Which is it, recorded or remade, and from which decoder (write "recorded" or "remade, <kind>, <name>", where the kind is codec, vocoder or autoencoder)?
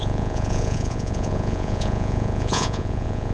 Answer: remade, vocoder, Vocos